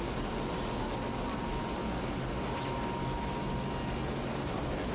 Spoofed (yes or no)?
no